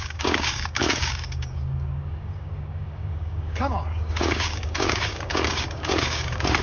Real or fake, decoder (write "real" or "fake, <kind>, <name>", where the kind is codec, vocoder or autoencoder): fake, codec, DAC